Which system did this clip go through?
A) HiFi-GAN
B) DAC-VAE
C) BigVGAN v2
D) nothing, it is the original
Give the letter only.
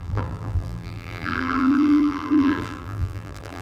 C